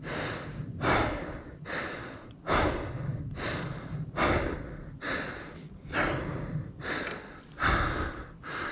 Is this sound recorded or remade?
recorded